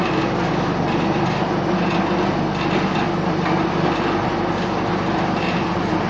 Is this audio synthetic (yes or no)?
no